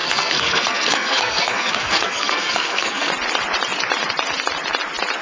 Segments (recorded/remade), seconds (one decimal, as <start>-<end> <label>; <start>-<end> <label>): 0.0-3.1 remade; 3.1-5.2 recorded